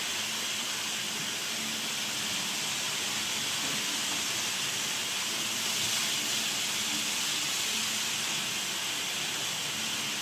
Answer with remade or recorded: recorded